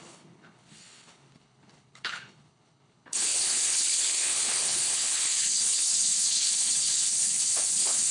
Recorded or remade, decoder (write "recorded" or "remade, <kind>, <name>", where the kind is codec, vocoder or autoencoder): remade, codec, HILCodec